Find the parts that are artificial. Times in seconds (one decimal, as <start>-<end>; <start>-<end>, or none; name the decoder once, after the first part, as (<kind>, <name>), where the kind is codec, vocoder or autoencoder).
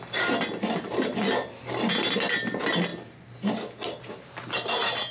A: none